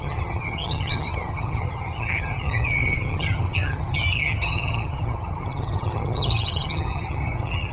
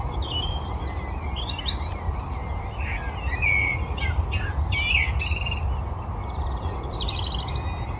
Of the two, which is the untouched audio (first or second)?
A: second